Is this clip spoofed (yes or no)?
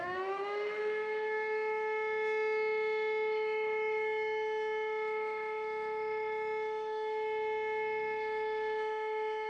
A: yes